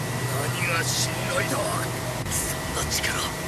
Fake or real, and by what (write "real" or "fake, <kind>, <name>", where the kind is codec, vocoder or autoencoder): real